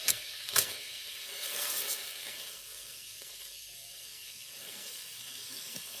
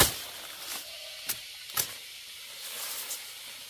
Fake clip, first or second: first